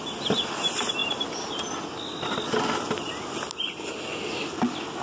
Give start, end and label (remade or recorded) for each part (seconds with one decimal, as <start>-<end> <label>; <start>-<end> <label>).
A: 0.0-5.0 recorded

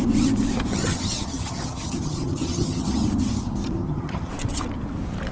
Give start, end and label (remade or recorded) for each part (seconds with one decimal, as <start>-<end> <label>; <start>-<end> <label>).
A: 0.0-0.7 recorded; 0.7-2.9 remade; 2.9-3.8 recorded; 3.8-4.3 remade; 4.3-5.3 recorded

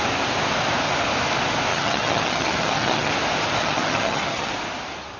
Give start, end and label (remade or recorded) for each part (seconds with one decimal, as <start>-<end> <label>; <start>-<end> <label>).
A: 0.0-1.7 recorded; 1.7-3.1 remade; 3.1-3.6 recorded; 3.6-4.5 remade; 4.5-5.2 recorded

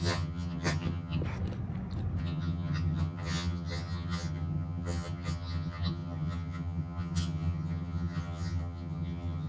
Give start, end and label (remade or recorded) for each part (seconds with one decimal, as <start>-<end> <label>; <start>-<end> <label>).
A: 0.0-1.2 remade; 1.2-2.2 recorded; 2.2-9.5 remade